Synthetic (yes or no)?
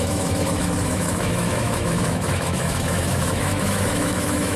yes